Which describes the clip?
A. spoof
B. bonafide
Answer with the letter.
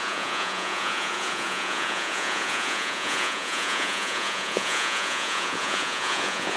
A